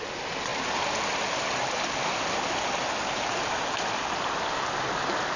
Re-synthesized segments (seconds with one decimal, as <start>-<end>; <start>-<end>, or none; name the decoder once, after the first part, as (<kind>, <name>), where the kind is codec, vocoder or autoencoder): none